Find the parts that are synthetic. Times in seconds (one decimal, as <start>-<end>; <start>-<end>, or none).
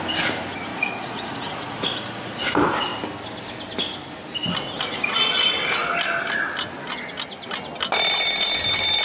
0.7-2.4